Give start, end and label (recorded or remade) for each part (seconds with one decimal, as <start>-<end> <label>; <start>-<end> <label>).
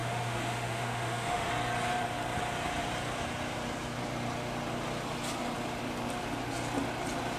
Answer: 0.0-1.5 remade; 1.5-7.4 recorded